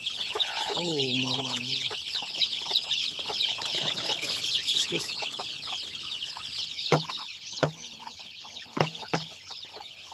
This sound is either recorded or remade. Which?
remade